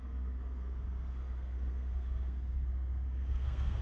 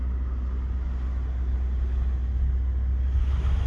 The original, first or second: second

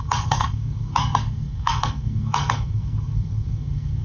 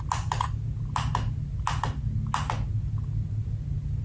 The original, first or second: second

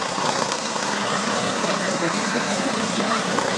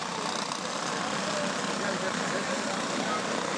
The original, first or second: second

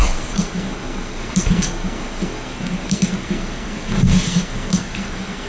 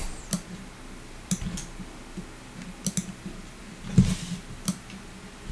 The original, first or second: second